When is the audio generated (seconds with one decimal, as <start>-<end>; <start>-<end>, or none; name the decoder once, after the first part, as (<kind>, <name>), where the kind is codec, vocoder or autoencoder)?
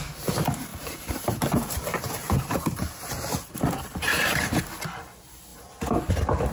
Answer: 0.7-4.6 (vocoder, BigVGAN v2)